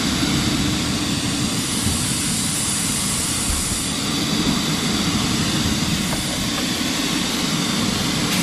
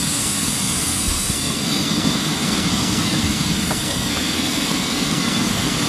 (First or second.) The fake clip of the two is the second